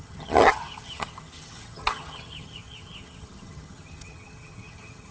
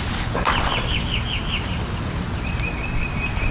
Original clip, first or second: second